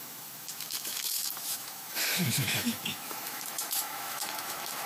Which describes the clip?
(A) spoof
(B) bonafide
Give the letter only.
A